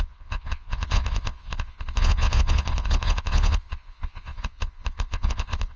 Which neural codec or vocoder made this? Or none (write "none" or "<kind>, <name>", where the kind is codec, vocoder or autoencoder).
vocoder, Vocos